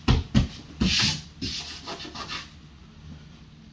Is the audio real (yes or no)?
yes